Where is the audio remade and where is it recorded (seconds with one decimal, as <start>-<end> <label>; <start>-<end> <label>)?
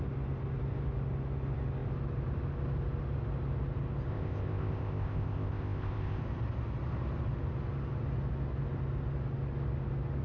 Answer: 0.0-4.1 recorded; 4.1-6.2 remade; 6.2-10.2 recorded